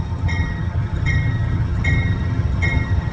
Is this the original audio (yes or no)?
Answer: no